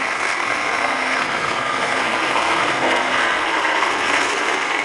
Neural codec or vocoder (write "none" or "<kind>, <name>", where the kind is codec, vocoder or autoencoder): codec, SNAC